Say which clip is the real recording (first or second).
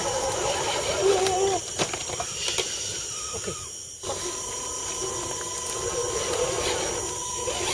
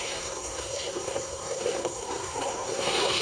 first